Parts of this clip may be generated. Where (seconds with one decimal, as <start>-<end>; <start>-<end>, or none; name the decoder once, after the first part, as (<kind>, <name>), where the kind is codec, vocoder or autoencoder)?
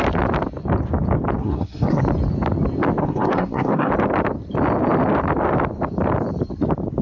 1.4-2.0 (codec, SNAC); 3.0-3.9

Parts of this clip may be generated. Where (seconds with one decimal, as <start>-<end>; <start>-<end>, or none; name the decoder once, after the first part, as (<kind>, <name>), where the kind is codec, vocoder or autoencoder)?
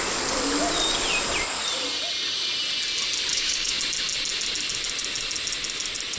3.3-3.8 (codec, DAC)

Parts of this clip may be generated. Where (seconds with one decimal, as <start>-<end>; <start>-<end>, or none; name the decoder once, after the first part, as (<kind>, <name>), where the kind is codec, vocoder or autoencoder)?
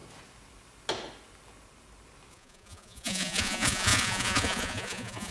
2.3-5.3 (vocoder, Vocos)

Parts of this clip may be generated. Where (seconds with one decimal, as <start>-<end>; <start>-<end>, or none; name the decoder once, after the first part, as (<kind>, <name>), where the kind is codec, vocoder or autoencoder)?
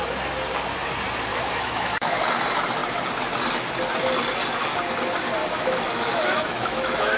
1.3-2.2 (autoencoder, DAC-VAE); 5.4-7.2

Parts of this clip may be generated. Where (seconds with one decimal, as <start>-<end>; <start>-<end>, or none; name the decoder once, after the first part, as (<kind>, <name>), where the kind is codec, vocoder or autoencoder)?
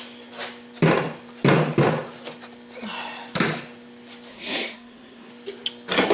4.3-5.3 (codec, SNAC)